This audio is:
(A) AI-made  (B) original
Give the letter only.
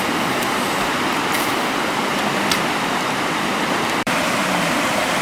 A